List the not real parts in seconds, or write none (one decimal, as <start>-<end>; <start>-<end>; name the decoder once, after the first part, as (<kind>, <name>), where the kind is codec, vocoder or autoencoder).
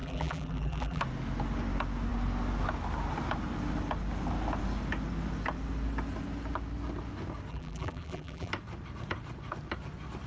0.0-1.0 (vocoder, BigVGAN v2); 7.5-8.5